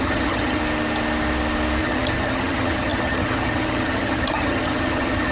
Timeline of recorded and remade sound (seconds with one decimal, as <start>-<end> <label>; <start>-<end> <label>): 0.0-0.6 remade; 0.6-1.8 recorded; 1.8-5.3 remade